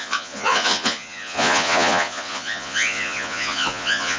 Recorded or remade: remade